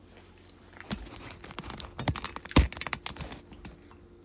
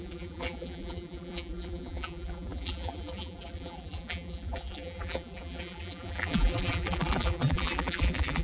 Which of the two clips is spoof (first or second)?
second